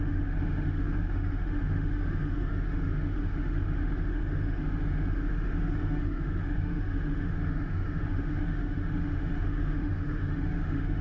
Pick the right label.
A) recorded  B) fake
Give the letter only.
B